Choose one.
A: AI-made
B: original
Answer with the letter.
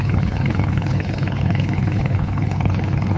A